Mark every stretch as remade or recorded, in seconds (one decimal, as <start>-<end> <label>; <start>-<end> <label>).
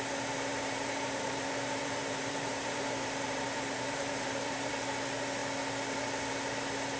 0.0-0.5 recorded; 0.5-4.7 remade; 4.7-7.0 recorded